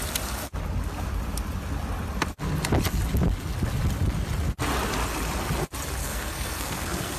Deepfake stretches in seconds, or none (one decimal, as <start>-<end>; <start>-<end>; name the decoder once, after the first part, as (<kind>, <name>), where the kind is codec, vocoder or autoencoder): 6.0-7.2 (codec, SNAC)